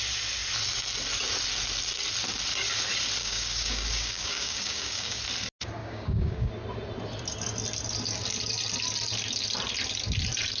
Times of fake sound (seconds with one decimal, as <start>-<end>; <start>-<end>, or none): 3.2-5.2; 5.8-6.5

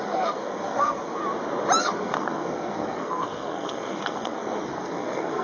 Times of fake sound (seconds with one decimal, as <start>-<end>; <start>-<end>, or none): 0.0-1.2; 1.8-5.4

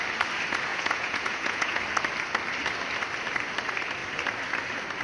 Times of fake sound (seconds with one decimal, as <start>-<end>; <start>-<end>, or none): 0.7-1.8

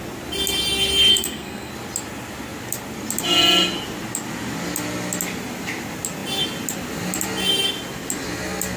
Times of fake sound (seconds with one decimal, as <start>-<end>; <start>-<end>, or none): 1.1-1.7

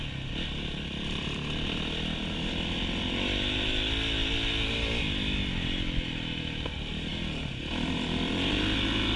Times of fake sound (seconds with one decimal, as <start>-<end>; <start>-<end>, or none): none

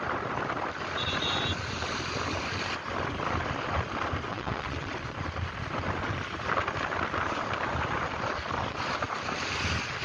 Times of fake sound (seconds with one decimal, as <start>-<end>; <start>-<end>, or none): 4.3-4.9

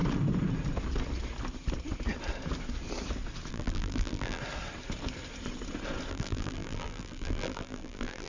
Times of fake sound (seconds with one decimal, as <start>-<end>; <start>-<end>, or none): 3.5-4.4; 6.1-8.3